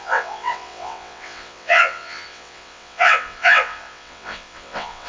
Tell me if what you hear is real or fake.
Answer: fake